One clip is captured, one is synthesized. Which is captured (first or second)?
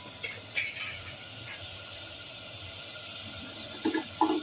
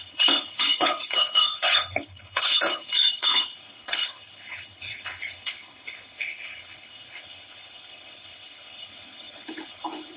first